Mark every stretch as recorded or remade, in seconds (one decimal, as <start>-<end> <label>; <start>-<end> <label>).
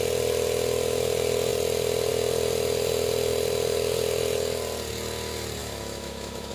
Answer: 0.0-5.6 recorded; 5.6-6.5 remade